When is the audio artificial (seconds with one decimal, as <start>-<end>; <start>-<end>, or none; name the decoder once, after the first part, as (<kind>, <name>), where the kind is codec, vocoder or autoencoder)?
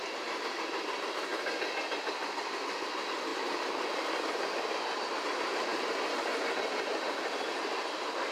none